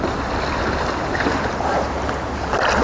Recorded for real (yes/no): yes